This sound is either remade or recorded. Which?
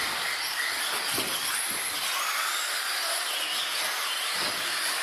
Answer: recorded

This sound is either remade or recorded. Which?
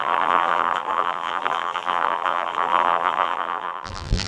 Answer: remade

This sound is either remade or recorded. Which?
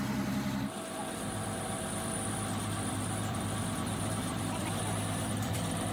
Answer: remade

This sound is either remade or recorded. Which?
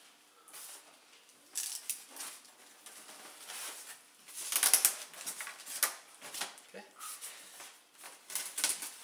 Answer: recorded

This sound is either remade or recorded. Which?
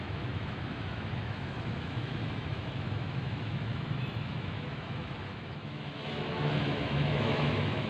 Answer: remade